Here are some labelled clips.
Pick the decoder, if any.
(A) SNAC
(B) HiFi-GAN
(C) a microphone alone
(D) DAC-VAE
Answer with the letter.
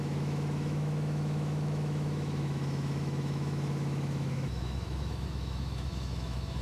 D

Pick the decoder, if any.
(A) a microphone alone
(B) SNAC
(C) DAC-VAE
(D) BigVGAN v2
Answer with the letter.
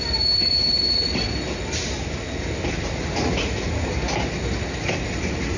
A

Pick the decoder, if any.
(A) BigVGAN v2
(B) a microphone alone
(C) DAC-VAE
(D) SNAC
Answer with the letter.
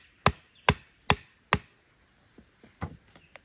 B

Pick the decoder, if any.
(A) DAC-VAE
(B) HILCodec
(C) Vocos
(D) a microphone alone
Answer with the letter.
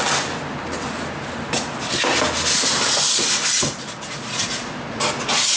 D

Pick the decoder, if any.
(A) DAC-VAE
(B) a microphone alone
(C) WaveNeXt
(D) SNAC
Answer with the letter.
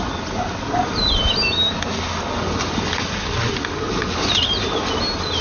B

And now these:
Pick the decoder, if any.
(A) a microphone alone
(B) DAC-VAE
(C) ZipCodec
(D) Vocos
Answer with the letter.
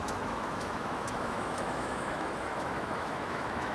B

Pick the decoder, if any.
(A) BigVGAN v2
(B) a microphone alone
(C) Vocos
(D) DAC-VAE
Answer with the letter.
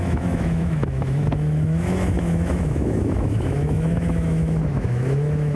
D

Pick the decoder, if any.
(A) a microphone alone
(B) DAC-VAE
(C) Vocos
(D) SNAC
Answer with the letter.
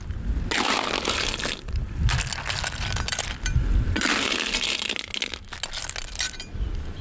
A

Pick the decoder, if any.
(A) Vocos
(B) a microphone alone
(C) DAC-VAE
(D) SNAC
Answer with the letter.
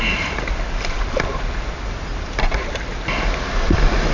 B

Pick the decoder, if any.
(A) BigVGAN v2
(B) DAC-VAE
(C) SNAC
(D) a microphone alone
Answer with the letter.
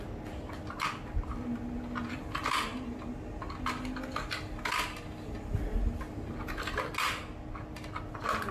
D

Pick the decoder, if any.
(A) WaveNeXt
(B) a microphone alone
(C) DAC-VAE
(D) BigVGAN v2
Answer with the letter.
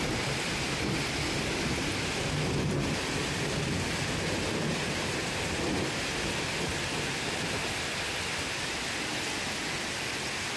B